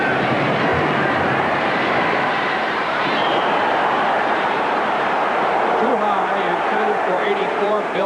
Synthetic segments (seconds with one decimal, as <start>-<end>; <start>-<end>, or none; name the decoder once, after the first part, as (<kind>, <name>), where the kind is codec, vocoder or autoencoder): 0.0-8.1 (vocoder, BigVGAN v2)